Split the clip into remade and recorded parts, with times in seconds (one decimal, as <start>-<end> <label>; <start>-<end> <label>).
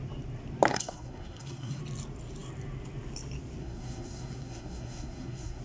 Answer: 0.0-0.7 recorded; 0.7-1.8 remade; 1.8-3.6 recorded; 3.6-5.6 remade